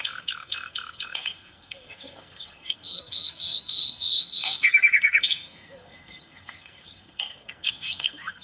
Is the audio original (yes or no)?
no